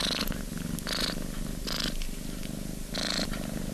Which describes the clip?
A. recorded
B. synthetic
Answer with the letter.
A